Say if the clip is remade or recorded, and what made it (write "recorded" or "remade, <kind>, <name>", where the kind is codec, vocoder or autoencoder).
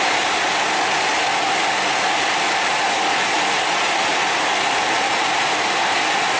recorded